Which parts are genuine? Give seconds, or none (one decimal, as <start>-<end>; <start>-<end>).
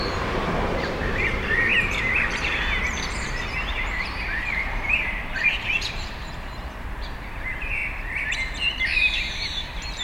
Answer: 7.8-9.3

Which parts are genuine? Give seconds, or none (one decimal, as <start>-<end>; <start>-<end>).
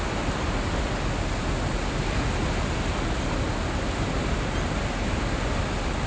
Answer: 0.0-6.1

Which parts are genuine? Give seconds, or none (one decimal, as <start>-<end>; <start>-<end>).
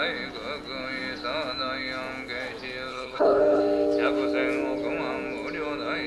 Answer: 0.0-2.9; 3.6-6.1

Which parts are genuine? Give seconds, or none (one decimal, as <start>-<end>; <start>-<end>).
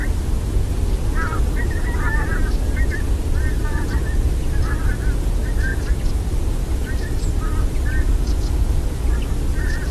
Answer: 0.0-5.7; 9.3-9.9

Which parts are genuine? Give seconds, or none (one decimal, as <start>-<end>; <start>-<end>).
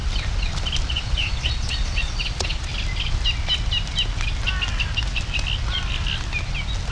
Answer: 0.0-0.9; 2.7-6.9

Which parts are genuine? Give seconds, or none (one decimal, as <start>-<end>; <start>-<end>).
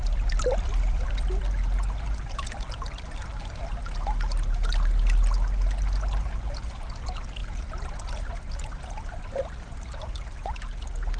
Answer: 1.4-7.4; 8.2-11.2